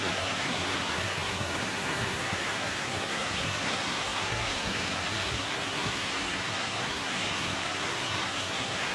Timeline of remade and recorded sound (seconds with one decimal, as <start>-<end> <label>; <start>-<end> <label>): 0.0-8.9 remade